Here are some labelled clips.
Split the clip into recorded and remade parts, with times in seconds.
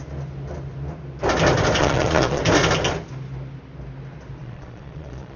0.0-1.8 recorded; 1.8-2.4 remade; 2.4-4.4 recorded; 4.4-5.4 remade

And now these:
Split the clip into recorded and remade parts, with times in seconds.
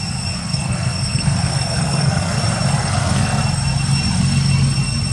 0.0-0.4 recorded; 0.4-2.4 remade; 2.4-2.8 recorded; 2.8-3.4 remade; 3.4-5.1 recorded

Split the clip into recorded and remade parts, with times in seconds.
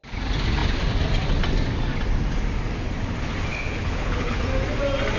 0.0-3.5 recorded; 3.5-4.4 remade; 4.4-5.2 recorded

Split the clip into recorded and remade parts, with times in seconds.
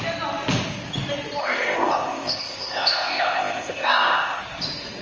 0.0-1.4 recorded; 1.4-4.4 remade; 4.4-5.0 recorded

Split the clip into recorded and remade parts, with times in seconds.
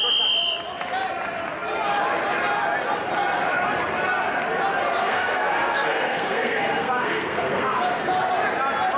0.0-5.0 recorded; 5.0-8.0 remade; 8.0-9.0 recorded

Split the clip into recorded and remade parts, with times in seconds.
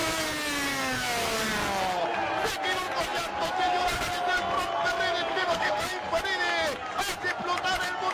0.0-5.3 recorded; 5.3-5.8 remade; 5.8-8.1 recorded